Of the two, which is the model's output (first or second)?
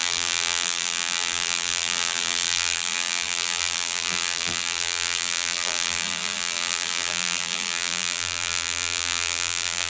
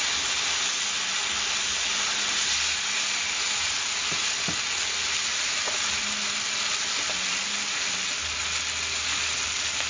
first